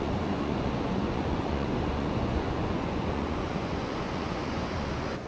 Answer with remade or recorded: remade